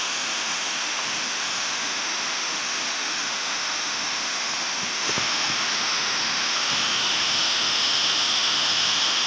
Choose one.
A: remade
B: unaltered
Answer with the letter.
A